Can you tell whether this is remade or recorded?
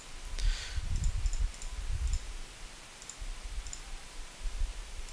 recorded